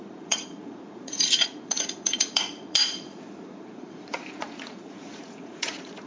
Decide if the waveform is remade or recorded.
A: remade